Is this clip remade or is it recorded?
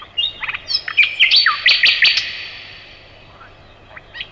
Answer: recorded